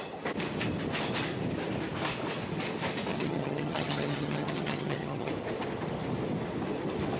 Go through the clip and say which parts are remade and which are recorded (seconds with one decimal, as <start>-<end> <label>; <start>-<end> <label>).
0.0-3.1 recorded; 3.1-5.3 remade; 5.3-7.2 recorded